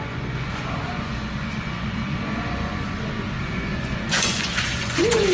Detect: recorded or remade remade